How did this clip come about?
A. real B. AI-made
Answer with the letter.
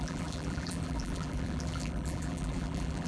B